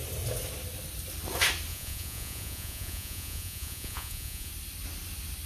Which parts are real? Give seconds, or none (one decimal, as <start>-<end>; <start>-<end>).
0.0-1.7; 4.5-5.5